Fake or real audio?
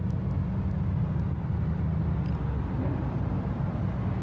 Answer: real